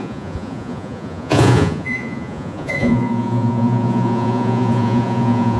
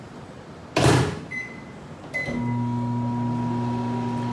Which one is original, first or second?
second